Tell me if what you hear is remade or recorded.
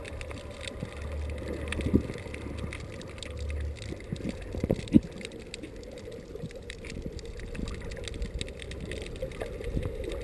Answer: recorded